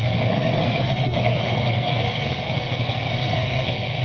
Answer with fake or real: fake